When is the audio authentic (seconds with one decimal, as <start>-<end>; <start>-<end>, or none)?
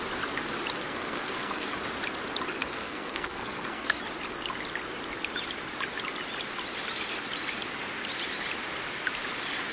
0.0-0.8; 1.7-2.5; 4.0-9.7